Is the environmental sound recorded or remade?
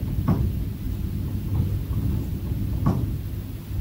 recorded